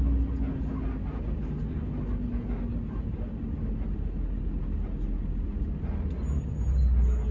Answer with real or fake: real